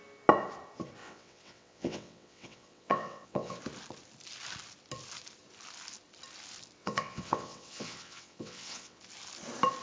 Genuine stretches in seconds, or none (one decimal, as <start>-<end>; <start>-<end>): 0.0-1.0; 3.6-6.8; 9.0-9.8